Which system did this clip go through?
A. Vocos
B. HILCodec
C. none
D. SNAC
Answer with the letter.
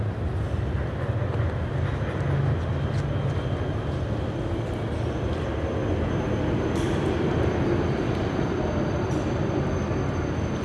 C